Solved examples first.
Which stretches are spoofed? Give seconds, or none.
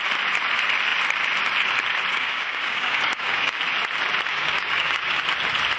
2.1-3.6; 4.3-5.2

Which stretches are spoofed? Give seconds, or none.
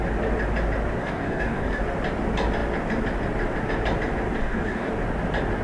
1.0-1.8; 4.4-4.9